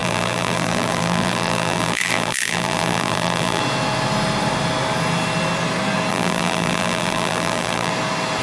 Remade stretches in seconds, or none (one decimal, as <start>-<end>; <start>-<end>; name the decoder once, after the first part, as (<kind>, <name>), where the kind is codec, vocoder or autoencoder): 0.0-3.6 (vocoder, BigVGAN v2); 6.1-7.9